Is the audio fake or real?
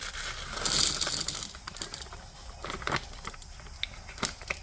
real